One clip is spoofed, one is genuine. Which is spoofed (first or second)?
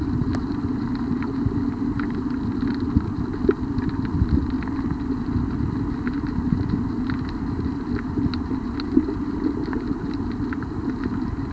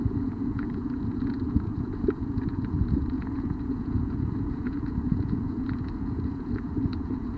second